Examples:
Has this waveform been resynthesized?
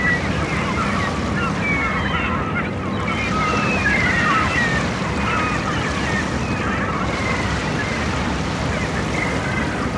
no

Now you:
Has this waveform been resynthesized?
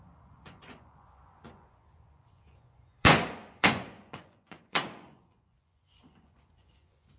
yes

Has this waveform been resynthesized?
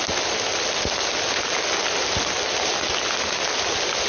no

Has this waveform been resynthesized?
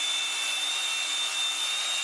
no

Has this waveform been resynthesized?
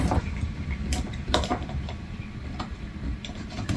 yes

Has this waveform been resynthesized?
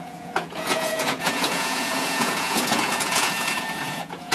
yes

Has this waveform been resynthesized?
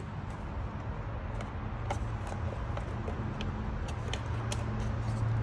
no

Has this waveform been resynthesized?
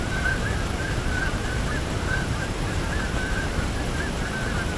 yes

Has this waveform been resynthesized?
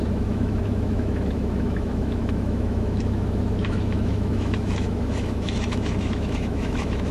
yes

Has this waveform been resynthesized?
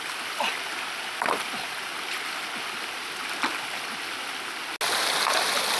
no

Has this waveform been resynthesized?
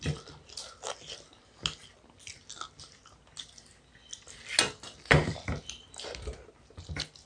no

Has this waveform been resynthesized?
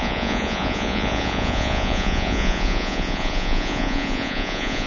yes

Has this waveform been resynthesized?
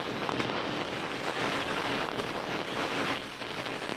yes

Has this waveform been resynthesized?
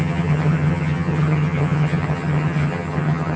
yes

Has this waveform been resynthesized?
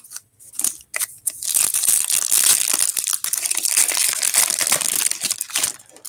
no